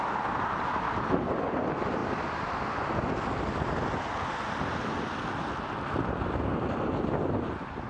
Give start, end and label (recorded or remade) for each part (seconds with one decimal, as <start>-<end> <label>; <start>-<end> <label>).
0.0-7.9 recorded